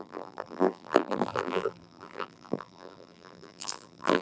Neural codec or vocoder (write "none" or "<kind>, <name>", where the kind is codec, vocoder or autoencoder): vocoder, BigVGAN v2